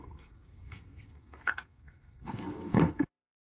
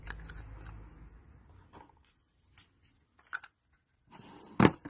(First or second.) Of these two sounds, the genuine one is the second